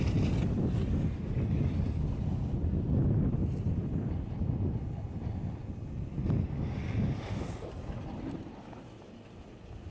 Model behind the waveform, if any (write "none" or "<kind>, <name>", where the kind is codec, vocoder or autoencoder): none